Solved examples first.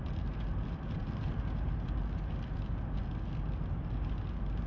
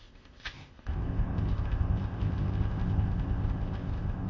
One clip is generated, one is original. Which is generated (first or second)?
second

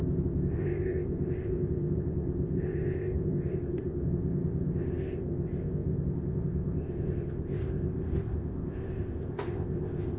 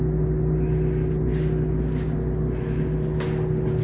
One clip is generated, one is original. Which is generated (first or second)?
first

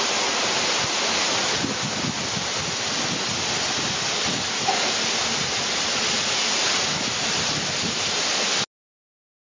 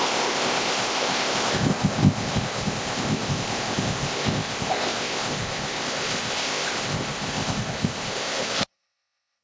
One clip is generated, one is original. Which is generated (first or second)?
second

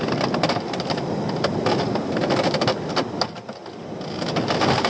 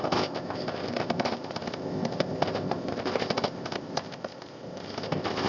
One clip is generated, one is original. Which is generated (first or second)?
second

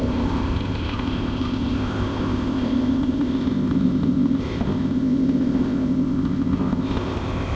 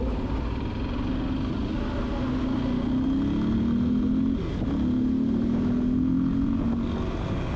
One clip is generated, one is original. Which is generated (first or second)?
first